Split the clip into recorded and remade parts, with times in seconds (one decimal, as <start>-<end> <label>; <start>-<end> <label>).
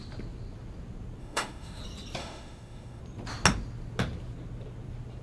0.0-1.2 recorded; 1.2-1.8 remade; 1.8-2.2 recorded; 2.2-3.0 remade; 3.0-5.2 recorded